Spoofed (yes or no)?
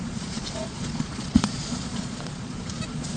yes